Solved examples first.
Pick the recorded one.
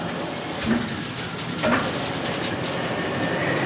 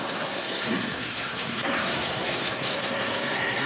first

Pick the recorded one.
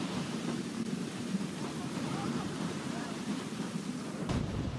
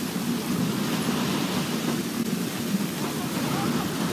second